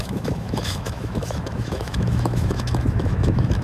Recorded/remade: remade